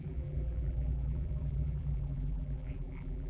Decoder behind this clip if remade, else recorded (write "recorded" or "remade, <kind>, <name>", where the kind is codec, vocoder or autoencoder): remade, vocoder, BigVGAN v2